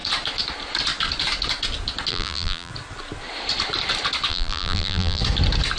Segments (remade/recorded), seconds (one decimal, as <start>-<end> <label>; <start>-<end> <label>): 0.0-2.1 recorded; 2.1-2.7 remade; 2.7-4.3 recorded; 4.3-5.2 remade; 5.2-5.8 recorded